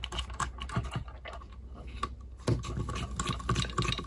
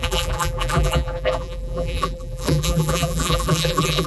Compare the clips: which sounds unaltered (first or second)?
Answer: first